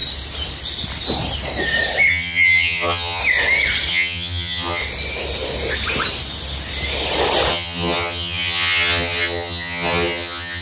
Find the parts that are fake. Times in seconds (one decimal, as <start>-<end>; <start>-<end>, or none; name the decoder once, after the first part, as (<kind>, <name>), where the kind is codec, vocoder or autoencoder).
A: 2.1-3.2 (vocoder, HiFi-GAN); 3.9-4.8; 7.5-10.6